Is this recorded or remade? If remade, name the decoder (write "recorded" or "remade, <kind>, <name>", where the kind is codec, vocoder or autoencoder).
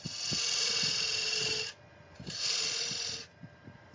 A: recorded